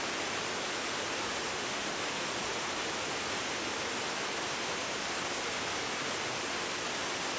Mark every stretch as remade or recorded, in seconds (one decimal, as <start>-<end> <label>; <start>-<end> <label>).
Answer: 0.0-1.5 recorded; 1.5-2.0 remade; 2.0-7.4 recorded